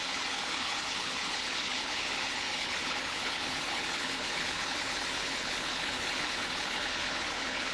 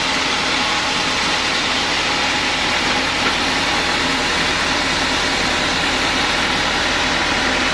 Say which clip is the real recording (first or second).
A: second